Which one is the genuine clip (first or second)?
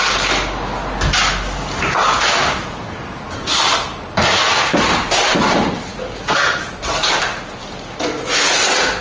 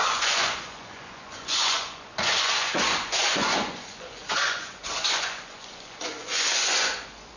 first